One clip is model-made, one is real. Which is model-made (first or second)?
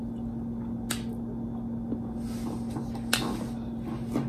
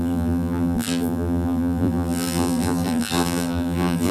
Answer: second